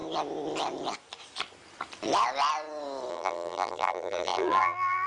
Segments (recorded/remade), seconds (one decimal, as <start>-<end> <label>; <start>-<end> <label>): 0.0-3.1 recorded; 3.1-5.1 remade